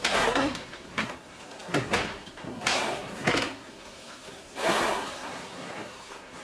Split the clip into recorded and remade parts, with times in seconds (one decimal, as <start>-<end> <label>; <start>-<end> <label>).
0.0-6.4 remade